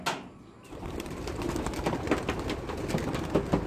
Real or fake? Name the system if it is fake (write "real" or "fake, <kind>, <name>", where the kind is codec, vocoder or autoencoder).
real